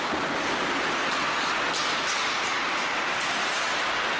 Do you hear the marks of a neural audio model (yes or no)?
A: no